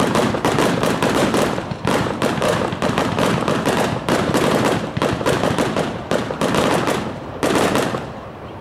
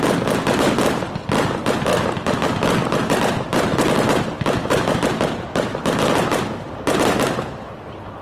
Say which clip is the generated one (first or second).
first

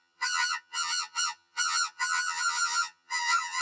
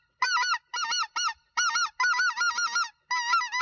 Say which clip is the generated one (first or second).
first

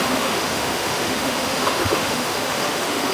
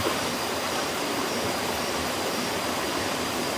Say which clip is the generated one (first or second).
first